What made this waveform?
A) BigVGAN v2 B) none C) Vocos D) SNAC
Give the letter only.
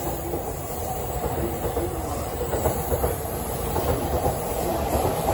A